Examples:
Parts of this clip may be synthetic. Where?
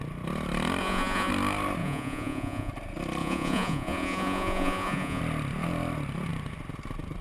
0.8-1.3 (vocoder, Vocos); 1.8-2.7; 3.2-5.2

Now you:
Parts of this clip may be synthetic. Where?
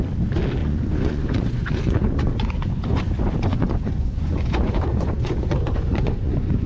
0.6-3.0 (vocoder, Vocos); 3.5-6.7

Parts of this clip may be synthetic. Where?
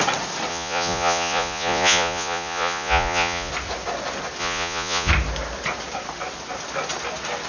0.5-3.5 (vocoder, Vocos); 4.4-5.1